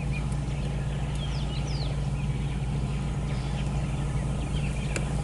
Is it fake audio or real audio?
real